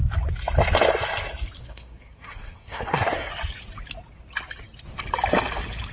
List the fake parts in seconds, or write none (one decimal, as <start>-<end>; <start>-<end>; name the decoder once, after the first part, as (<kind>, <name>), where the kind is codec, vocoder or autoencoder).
1.6-3.3 (codec, SNAC)